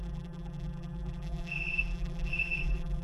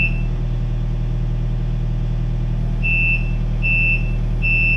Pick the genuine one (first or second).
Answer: second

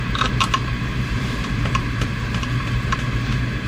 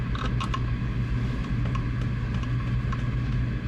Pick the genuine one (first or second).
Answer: second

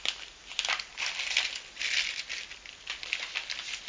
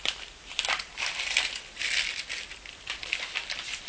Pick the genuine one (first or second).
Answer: first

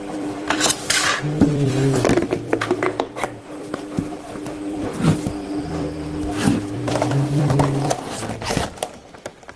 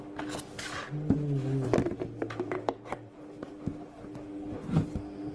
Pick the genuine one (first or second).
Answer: second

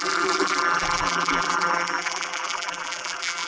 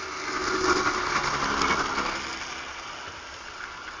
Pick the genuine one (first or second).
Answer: second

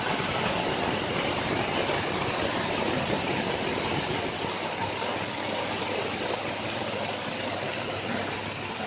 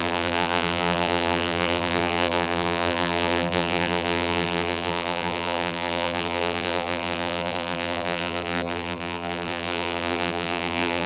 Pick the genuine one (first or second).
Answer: first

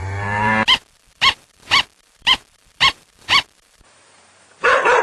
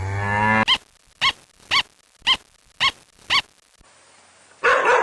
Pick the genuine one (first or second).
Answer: second